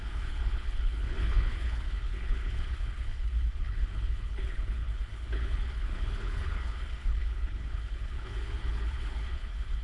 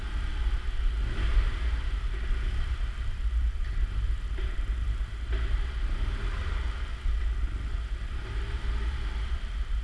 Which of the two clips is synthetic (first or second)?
first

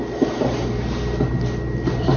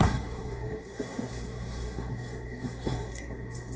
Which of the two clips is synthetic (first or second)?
second